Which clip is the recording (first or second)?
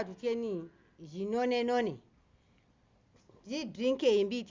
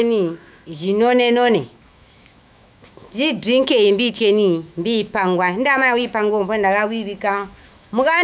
first